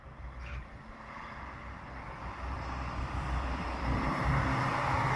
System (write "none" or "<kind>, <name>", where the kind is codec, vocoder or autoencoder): none